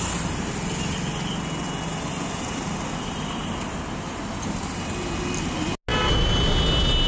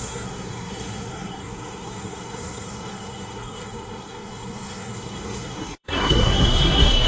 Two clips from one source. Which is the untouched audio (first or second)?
first